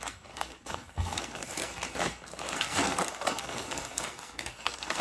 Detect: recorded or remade remade